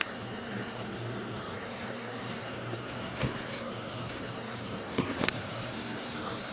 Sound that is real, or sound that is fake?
fake